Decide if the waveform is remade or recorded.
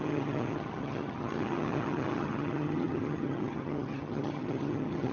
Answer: remade